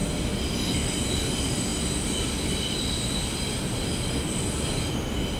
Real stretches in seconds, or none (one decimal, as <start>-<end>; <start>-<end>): 0.0-5.4